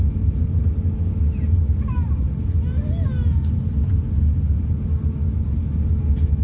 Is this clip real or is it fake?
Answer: real